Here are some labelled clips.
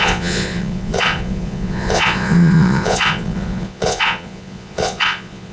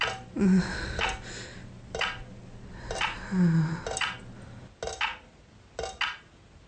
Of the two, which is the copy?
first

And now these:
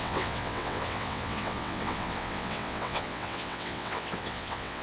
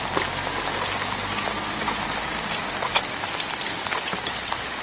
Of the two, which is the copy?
first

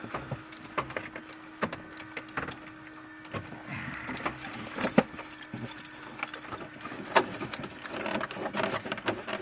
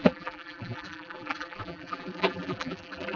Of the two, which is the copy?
second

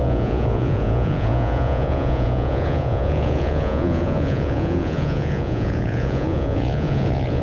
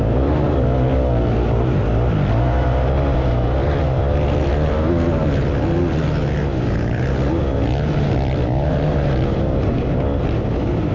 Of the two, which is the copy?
first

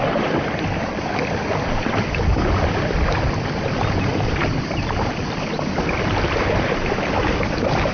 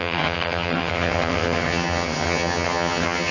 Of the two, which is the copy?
second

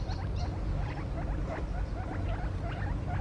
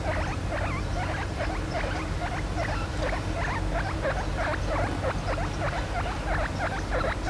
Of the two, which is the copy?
first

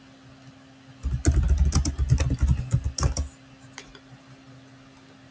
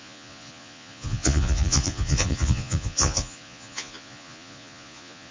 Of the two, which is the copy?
second